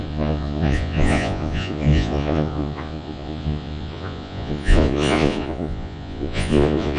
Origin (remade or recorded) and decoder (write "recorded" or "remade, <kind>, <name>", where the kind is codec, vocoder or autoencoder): remade, vocoder, Vocos